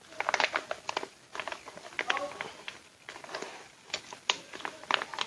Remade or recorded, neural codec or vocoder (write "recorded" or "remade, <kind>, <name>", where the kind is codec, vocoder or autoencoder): recorded